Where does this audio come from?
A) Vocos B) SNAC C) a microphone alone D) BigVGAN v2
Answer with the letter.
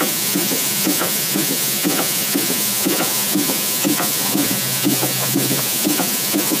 A